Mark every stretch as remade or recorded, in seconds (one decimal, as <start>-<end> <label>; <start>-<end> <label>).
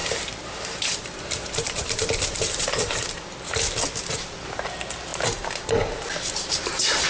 0.0-3.2 remade; 3.2-7.1 recorded